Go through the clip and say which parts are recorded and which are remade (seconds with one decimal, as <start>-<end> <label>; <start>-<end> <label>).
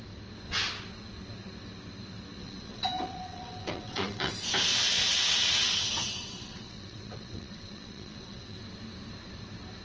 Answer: 0.0-2.4 recorded; 2.4-4.3 remade; 4.3-4.7 recorded; 4.7-8.6 remade; 8.6-9.8 recorded